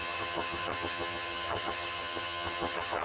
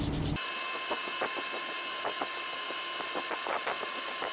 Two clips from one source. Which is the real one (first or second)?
second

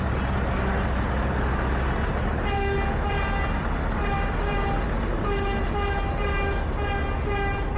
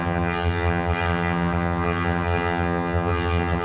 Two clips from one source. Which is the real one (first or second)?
first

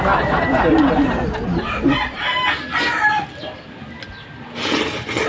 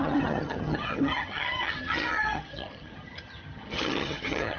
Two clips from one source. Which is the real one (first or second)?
first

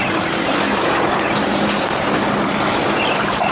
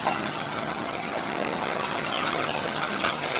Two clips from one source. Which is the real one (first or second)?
first